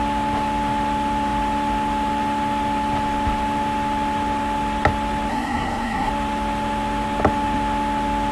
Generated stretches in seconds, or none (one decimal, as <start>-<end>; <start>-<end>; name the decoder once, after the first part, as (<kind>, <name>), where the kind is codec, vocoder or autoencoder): 5.3-6.1 (codec, SNAC)